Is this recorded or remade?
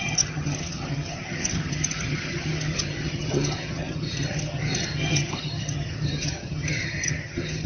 remade